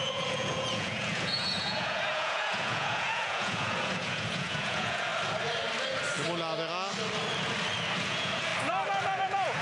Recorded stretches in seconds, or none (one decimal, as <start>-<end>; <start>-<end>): 5.1-8.0; 8.5-9.2